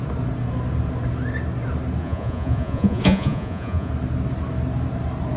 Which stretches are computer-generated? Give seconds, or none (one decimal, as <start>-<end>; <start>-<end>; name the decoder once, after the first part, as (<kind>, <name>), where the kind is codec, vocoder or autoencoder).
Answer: 2.0-3.9 (vocoder, Vocos)